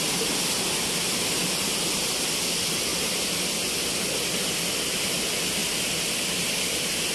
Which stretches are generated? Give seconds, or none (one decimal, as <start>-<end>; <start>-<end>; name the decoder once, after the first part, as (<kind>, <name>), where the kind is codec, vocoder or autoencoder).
none